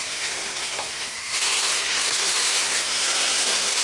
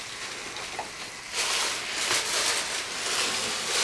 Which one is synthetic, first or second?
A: first